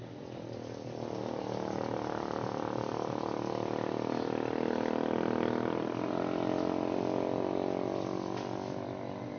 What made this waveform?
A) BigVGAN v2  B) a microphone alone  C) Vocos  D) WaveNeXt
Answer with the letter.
B